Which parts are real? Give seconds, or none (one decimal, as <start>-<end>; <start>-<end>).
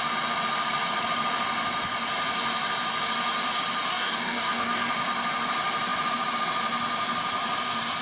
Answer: 0.0-3.9; 4.9-8.0